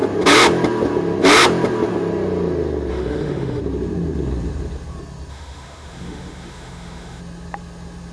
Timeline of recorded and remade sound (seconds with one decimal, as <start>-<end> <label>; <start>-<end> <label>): 0.0-2.9 recorded; 2.9-3.6 remade; 3.6-5.3 recorded; 5.3-7.2 remade; 7.2-8.1 recorded